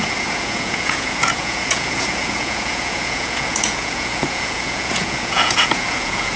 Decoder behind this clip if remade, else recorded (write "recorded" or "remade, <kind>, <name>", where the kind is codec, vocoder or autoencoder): remade, vocoder, Vocos